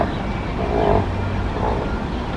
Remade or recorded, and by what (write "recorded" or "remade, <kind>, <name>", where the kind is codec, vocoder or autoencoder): recorded